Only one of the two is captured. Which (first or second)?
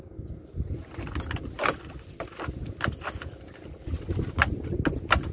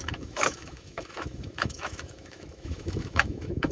first